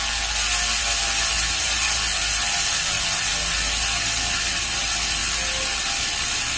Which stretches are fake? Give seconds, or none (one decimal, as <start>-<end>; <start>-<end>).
none